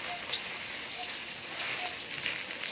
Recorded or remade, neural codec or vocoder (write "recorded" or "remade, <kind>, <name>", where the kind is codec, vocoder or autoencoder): recorded